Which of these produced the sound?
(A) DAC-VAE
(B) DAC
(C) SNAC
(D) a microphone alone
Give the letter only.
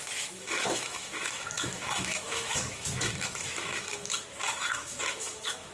A